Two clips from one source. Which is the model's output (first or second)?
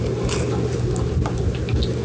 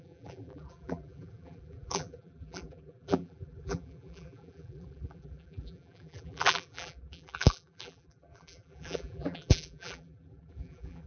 second